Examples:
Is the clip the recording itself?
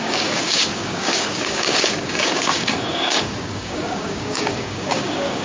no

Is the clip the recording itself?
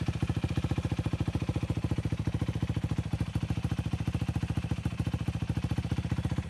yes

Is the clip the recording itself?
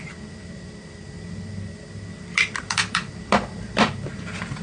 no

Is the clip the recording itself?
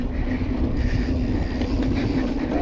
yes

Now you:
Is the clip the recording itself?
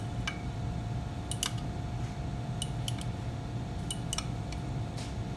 yes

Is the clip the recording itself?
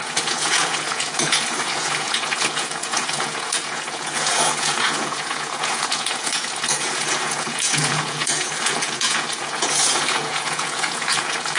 no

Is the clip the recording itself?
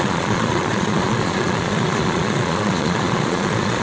no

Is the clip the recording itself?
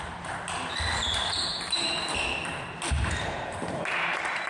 yes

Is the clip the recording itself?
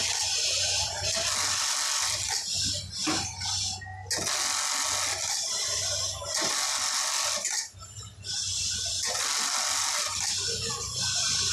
yes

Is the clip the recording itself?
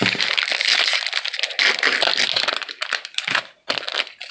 yes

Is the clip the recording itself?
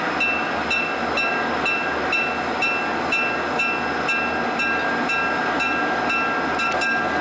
yes